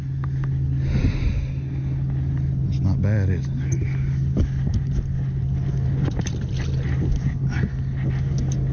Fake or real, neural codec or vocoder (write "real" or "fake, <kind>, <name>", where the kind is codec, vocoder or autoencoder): real